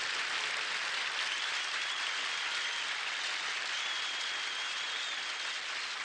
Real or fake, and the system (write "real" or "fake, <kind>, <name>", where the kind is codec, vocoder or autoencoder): real